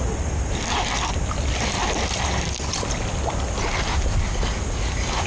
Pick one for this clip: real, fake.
real